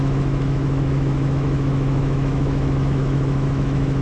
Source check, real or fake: fake